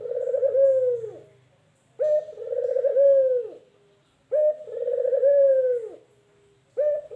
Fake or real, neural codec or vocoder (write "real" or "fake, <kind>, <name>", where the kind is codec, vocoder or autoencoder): real